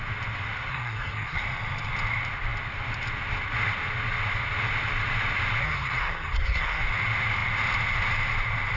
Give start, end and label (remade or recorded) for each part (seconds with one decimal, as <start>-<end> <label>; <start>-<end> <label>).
0.0-0.7 recorded; 0.7-1.4 remade; 1.4-5.6 recorded; 5.6-6.8 remade; 6.8-8.8 recorded